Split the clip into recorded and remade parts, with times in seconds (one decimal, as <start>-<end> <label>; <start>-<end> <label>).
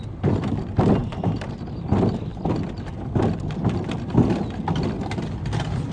0.0-1.0 recorded; 1.0-1.6 remade; 1.6-5.9 recorded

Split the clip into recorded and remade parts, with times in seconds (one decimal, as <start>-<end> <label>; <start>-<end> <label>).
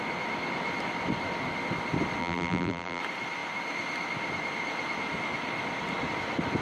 0.0-2.2 recorded; 2.2-3.0 remade; 3.0-6.6 recorded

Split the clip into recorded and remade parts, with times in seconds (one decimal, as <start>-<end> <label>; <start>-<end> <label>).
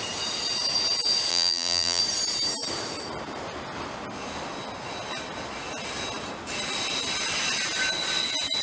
0.0-1.3 recorded; 1.3-2.0 remade; 2.0-8.6 recorded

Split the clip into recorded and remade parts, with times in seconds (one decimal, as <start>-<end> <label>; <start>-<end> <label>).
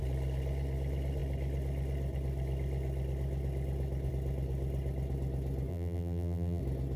0.0-5.7 recorded; 5.7-6.6 remade; 6.6-7.0 recorded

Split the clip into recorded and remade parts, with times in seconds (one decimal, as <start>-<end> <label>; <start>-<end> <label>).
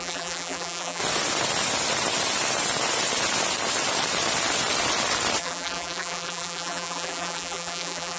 0.0-1.0 remade; 1.0-5.4 recorded; 5.4-8.2 remade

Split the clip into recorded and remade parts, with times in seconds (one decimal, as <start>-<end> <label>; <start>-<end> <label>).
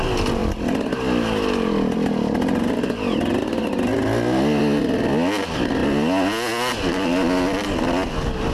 0.0-8.5 recorded